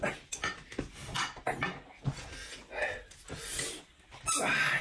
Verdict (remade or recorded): recorded